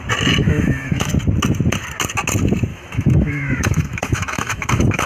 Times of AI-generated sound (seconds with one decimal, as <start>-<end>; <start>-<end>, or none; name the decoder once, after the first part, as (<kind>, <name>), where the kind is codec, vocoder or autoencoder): 0.4-1.1 (autoencoder, DAC-VAE); 2.7-5.1